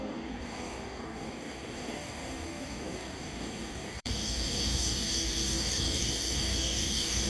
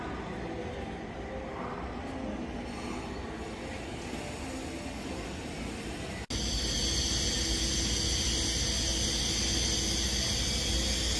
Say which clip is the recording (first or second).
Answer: second